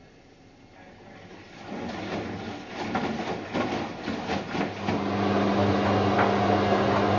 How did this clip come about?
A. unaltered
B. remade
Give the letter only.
A